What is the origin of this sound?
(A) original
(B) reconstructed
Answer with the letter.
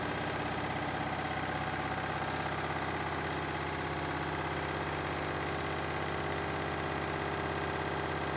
A